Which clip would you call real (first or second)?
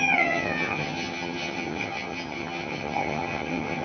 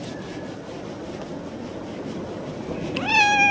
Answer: second